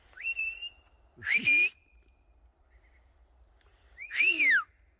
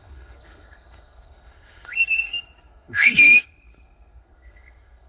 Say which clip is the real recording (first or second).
first